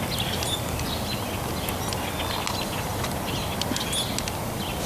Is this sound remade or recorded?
recorded